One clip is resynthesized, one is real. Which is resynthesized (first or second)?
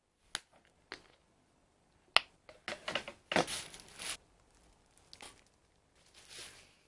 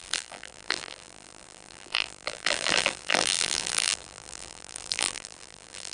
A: second